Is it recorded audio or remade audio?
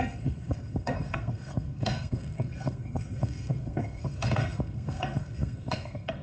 remade